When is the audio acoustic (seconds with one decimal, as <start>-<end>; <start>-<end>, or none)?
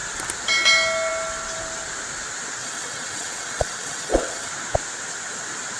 0.0-2.6; 4.5-5.8